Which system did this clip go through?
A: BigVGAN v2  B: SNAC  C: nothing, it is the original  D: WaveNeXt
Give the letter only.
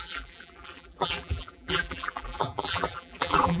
A